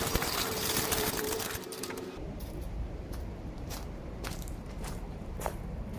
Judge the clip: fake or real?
fake